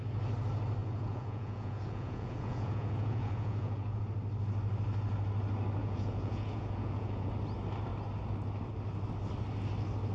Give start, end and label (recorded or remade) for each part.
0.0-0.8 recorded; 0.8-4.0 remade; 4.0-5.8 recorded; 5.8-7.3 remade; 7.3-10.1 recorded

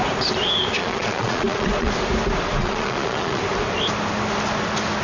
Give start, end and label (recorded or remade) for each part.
0.0-0.8 recorded; 0.8-1.9 remade; 1.9-2.6 recorded; 2.6-3.4 remade; 3.4-5.0 recorded

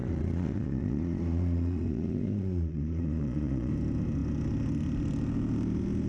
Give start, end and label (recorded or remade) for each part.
0.0-3.7 remade; 3.7-6.1 recorded

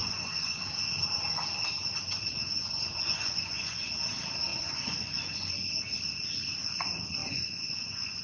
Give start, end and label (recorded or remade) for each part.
0.0-0.6 remade; 0.6-2.3 recorded; 2.3-3.9 remade; 3.9-4.5 recorded; 4.5-5.5 remade; 5.5-7.2 recorded; 7.2-8.2 remade

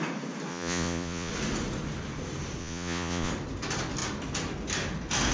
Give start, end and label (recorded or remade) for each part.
0.0-0.5 recorded; 0.5-1.3 remade; 1.3-2.6 recorded; 2.6-3.3 remade; 3.3-5.3 recorded

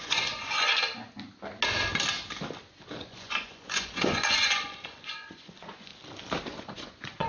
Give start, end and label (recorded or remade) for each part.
0.0-0.7 remade; 0.7-3.0 recorded; 3.0-5.9 remade; 5.9-6.4 recorded; 6.4-7.3 remade